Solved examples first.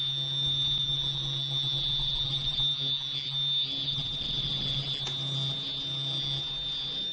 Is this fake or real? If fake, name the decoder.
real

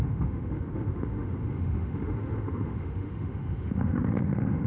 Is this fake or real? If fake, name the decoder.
fake, autoencoder, DAC-VAE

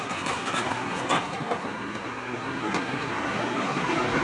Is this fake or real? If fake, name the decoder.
fake, codec, SNAC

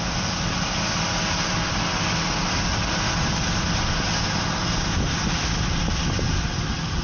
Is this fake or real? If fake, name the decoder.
real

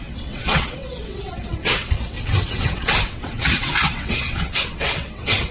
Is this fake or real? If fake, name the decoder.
fake, vocoder, WaveNeXt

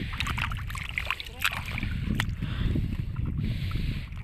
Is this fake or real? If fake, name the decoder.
real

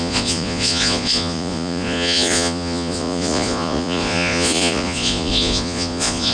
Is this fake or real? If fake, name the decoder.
fake, vocoder, Vocos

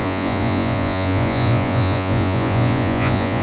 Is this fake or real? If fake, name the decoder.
fake, vocoder, Vocos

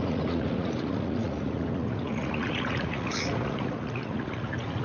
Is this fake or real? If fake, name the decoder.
fake, vocoder, Vocos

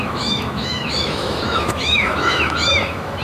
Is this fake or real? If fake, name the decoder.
fake, autoencoder, DAC-VAE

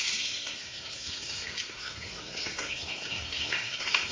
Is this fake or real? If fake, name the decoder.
fake, codec, SNAC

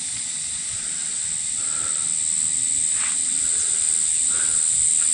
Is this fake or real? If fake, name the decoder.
real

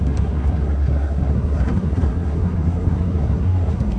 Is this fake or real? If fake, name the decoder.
fake, codec, SNAC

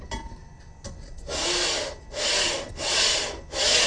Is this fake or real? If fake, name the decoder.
real